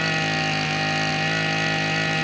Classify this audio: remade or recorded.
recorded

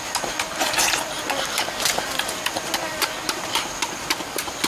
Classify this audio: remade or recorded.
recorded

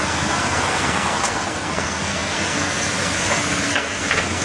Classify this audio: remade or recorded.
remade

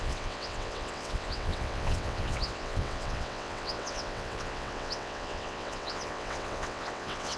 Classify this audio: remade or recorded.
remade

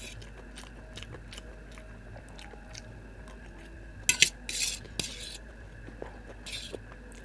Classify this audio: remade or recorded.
recorded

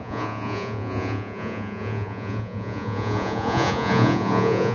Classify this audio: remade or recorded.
remade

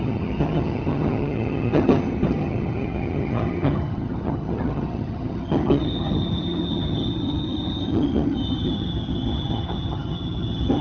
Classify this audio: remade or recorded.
remade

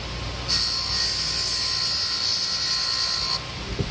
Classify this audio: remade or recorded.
recorded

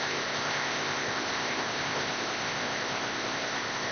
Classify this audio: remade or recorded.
remade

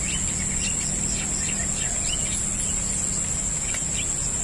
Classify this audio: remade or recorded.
recorded